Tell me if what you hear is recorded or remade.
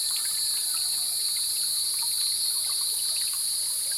recorded